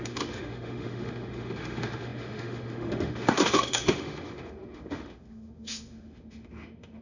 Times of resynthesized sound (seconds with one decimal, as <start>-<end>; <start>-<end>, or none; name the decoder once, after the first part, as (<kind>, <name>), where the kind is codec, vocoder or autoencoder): 0.0-7.0 (autoencoder, DAC-VAE)